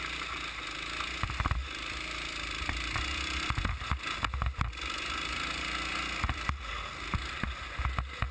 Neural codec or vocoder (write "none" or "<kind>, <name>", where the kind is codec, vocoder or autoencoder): none